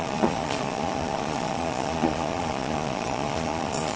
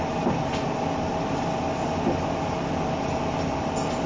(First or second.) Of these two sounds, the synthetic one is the first